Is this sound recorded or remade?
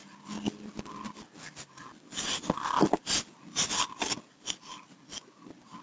recorded